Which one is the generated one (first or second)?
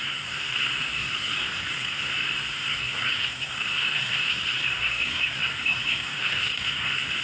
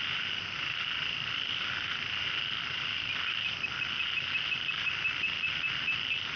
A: first